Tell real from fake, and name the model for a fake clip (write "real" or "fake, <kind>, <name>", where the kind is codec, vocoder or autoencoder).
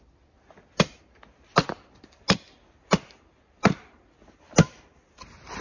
real